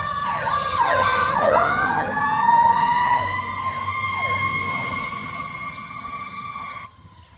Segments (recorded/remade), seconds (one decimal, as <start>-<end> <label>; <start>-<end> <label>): 0.0-3.2 remade; 3.2-4.7 recorded; 4.7-7.4 remade